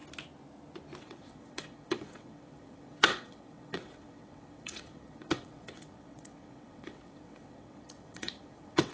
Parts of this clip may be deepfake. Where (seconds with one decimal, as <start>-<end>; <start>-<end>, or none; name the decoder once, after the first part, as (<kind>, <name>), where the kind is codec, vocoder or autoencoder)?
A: 1.0-8.9 (vocoder, WaveNeXt)